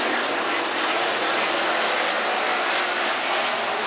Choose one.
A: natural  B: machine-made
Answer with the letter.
A